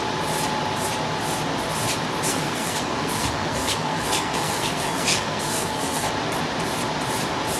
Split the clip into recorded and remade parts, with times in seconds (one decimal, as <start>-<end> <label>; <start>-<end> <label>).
0.0-2.3 recorded; 2.3-6.1 remade; 6.1-7.6 recorded

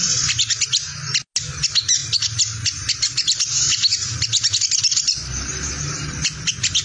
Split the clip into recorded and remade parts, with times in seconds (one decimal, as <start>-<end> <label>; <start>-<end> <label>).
0.0-6.8 recorded

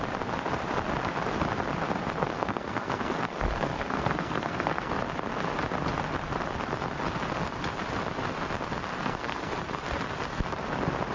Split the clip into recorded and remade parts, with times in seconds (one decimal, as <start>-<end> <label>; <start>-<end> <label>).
0.0-2.2 recorded; 2.2-4.9 remade; 4.9-9.0 recorded; 9.0-9.5 remade; 9.5-11.1 recorded

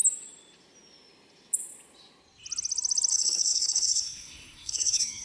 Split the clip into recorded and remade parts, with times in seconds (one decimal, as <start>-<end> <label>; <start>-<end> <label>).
0.0-3.1 recorded; 3.1-5.2 remade

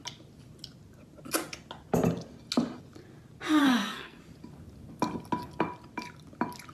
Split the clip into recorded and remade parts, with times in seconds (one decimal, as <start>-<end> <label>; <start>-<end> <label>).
0.0-3.6 recorded; 3.6-4.2 remade; 4.2-6.7 recorded